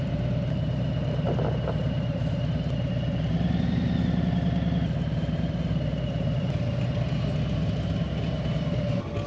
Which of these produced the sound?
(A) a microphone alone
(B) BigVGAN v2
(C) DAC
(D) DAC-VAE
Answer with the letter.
A